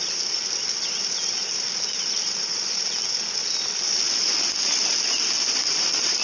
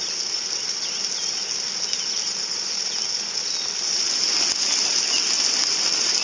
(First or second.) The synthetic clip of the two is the first